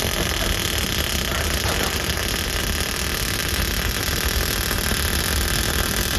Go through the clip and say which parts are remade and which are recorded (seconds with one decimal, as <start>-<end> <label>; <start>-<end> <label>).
0.0-6.2 recorded